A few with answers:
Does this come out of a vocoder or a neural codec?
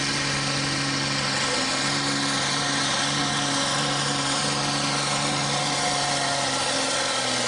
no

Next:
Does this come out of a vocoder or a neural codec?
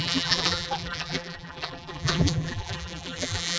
yes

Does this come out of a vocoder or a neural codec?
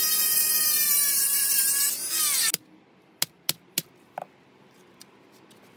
no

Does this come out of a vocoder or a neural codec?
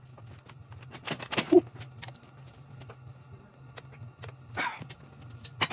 no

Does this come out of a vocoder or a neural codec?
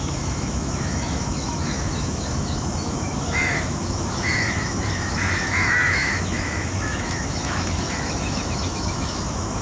yes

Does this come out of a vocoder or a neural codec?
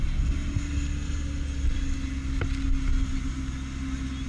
no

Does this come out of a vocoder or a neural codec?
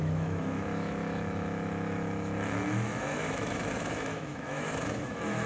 yes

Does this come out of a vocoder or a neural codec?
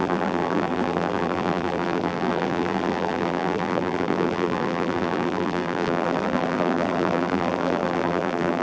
yes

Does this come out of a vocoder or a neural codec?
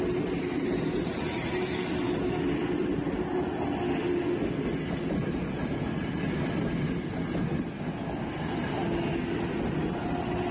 no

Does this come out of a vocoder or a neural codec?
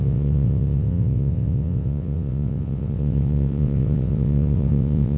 yes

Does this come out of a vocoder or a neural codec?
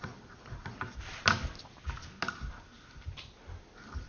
no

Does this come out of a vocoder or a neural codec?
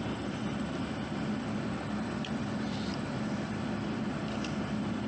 no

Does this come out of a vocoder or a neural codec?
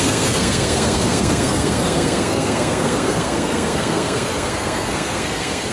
yes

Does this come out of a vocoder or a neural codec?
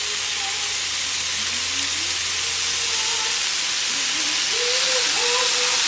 no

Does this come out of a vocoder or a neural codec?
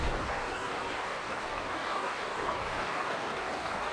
yes